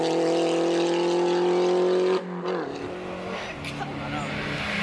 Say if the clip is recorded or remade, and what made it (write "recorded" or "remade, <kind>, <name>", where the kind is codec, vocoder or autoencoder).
recorded